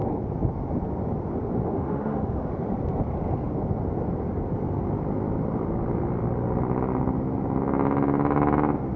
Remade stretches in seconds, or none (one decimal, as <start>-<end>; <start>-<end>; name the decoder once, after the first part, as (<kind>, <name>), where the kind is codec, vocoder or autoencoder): 1.7-2.5 (autoencoder, DAC-VAE)